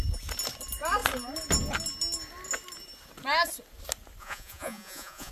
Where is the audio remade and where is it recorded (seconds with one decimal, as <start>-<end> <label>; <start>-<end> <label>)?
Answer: 0.0-4.2 recorded; 4.2-5.3 remade